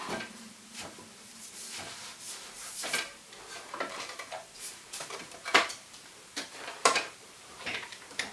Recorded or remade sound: remade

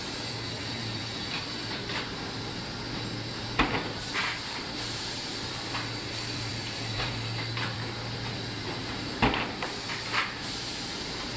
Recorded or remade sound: remade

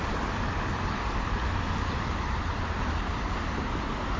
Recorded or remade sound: recorded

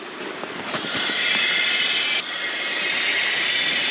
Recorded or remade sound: remade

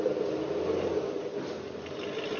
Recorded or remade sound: recorded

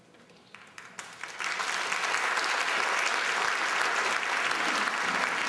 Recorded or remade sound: recorded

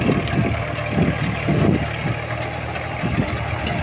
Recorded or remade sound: recorded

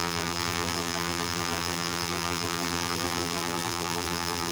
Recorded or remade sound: remade